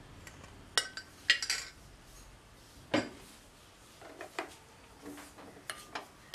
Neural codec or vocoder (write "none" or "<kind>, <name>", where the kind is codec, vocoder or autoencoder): none